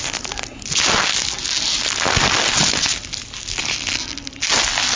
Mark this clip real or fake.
real